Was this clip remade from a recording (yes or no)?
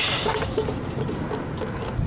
no